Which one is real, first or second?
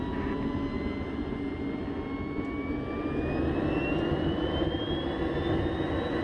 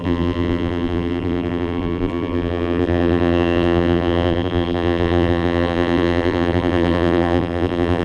first